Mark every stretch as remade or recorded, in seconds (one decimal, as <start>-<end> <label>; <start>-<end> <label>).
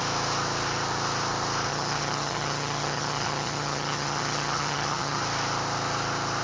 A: 0.0-1.7 recorded; 1.7-5.2 remade; 5.2-6.4 recorded